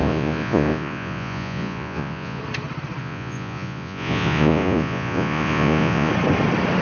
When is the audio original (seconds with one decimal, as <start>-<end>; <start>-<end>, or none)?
2.4-3.0; 6.1-6.8